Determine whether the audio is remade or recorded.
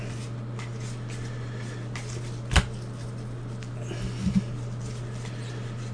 recorded